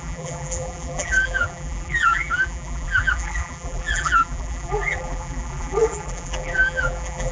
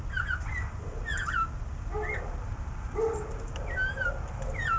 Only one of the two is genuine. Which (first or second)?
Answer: second